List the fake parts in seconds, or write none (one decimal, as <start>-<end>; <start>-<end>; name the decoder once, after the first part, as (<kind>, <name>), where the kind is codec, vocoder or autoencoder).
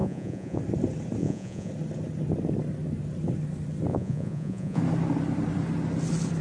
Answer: 0.0-0.6 (vocoder, Vocos); 1.2-1.7; 3.9-4.8